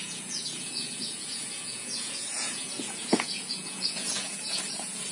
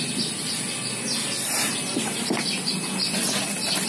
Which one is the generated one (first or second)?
first